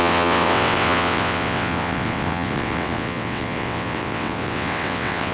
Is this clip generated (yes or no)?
yes